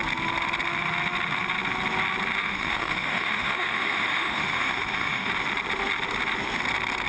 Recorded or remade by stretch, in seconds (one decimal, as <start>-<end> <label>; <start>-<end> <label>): 0.0-2.4 recorded; 2.4-5.3 remade; 5.3-7.1 recorded

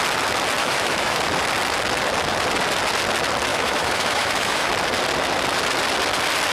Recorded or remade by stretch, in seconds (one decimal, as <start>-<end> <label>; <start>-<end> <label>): 0.0-0.6 recorded; 0.6-1.2 remade; 1.2-3.5 recorded; 3.5-4.7 remade; 4.7-6.5 recorded

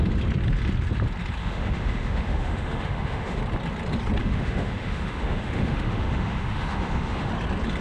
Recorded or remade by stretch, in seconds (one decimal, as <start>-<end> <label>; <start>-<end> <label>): 0.0-1.4 recorded; 1.4-3.4 remade; 3.4-4.2 recorded; 4.2-7.3 remade; 7.3-7.8 recorded

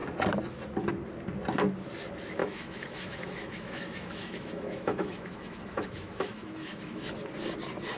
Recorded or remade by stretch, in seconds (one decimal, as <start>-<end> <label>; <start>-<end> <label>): 0.0-2.4 recorded; 2.4-7.1 remade; 7.1-8.0 recorded

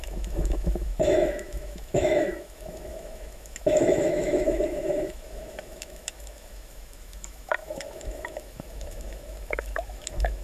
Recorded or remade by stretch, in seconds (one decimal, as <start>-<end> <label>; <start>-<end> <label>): 0.0-10.4 remade

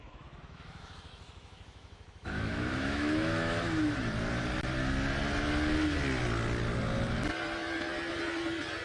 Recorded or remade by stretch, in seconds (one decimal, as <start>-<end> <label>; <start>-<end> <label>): 0.0-3.9 remade; 3.9-8.8 recorded

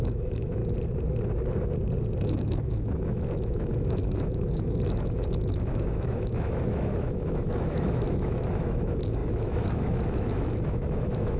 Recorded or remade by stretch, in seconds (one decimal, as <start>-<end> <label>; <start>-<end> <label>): 0.0-0.6 remade; 0.6-2.2 recorded; 2.2-11.4 remade

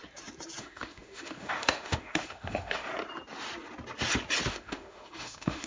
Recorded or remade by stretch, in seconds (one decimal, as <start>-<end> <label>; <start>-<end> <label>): 0.0-0.6 recorded; 0.6-2.9 remade; 2.9-4.5 recorded; 4.5-5.7 remade